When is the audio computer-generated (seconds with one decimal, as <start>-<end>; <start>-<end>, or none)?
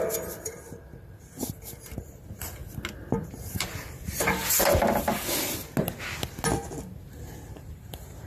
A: 0.0-2.6; 3.3-4.4; 7.5-8.3